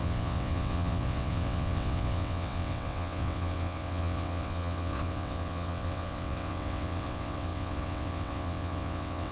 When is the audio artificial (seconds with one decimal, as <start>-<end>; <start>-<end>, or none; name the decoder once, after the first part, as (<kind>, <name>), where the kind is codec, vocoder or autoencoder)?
0.0-9.3 (vocoder, WaveNeXt)